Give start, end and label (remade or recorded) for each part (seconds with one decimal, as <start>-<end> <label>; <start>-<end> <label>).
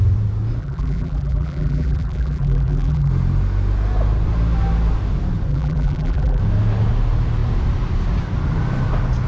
0.0-0.6 recorded; 0.6-3.1 remade; 3.1-5.5 recorded; 5.5-6.4 remade; 6.4-9.3 recorded